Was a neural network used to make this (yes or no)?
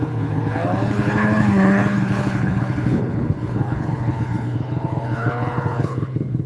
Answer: yes